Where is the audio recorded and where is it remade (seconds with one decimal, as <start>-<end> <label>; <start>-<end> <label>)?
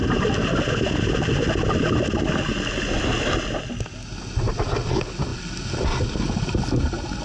0.0-7.2 recorded